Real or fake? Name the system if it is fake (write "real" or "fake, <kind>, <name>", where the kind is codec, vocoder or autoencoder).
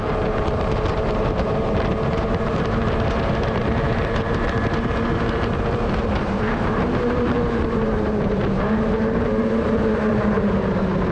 fake, vocoder, BigVGAN v2